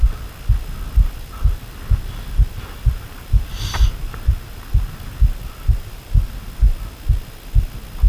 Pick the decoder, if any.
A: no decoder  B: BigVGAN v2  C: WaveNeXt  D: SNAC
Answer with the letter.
A